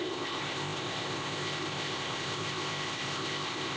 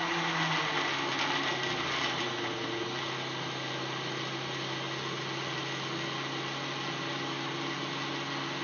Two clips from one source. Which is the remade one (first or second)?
first